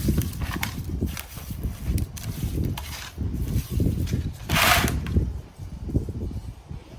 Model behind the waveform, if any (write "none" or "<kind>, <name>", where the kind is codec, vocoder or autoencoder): vocoder, BigVGAN v2